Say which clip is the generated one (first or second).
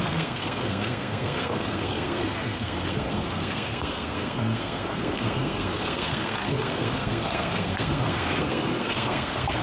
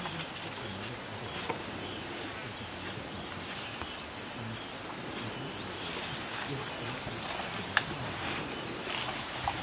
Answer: first